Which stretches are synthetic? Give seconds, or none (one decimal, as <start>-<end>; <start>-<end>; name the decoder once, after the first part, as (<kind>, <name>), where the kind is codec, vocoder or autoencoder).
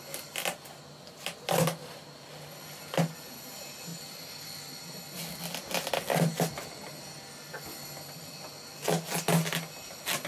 none